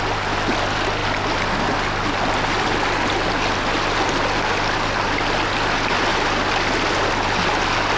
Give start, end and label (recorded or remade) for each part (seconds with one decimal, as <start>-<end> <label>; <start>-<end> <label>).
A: 0.0-8.0 recorded